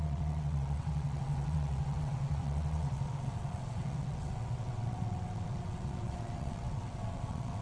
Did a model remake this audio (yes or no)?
yes